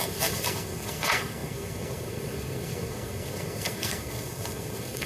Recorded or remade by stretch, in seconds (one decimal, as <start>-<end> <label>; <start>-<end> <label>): 0.0-5.1 remade